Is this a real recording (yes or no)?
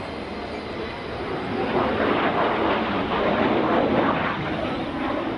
yes